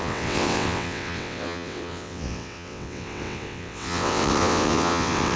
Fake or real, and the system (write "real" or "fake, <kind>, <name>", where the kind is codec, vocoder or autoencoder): fake, vocoder, WaveNeXt